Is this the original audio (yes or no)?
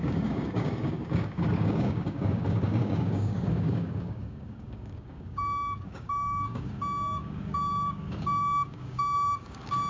no